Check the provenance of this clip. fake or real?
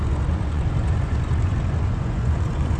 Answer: fake